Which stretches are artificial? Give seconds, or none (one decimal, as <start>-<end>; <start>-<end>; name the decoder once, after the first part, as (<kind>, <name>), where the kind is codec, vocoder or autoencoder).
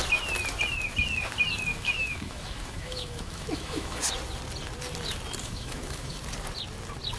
1.7-4.0 (autoencoder, DAC-VAE); 5.4-6.2